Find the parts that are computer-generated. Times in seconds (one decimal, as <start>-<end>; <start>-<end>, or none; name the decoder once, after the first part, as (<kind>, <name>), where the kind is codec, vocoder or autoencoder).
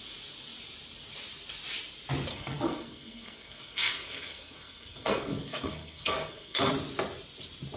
2.3-6.7 (codec, SNAC)